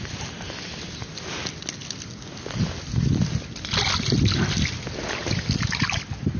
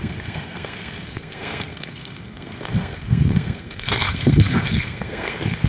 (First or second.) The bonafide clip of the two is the first